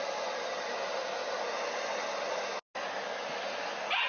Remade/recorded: recorded